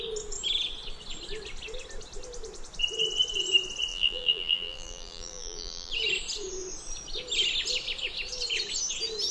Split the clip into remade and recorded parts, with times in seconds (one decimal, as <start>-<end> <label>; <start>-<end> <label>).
0.0-3.9 recorded; 3.9-5.9 remade; 5.9-9.3 recorded